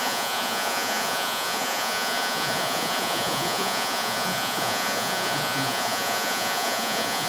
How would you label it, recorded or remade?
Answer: remade